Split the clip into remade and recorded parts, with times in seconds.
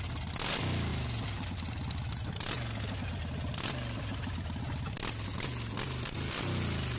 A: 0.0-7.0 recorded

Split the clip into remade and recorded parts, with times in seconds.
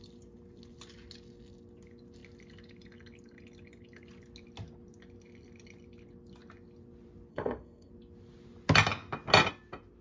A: 0.0-7.3 recorded; 7.3-7.9 remade; 7.9-10.0 recorded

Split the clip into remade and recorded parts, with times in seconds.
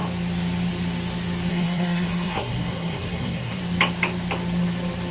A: 0.0-1.5 recorded; 1.5-3.6 remade; 3.6-5.1 recorded